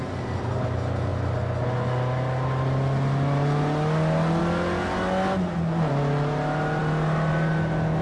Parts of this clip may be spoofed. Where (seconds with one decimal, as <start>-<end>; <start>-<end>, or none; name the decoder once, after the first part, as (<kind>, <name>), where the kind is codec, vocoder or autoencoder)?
none